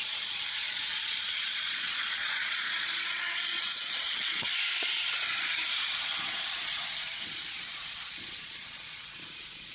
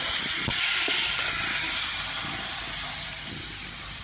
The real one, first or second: second